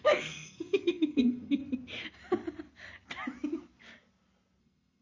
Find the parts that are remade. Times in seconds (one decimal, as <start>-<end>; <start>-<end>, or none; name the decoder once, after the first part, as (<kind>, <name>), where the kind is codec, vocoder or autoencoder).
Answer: 0.0-1.6 (codec, SNAC); 4.6-5.0